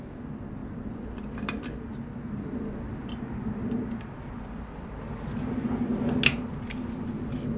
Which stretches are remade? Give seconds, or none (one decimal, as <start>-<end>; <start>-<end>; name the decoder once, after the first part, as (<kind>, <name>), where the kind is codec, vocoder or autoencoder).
0.6-1.2 (vocoder, BigVGAN v2); 1.9-3.1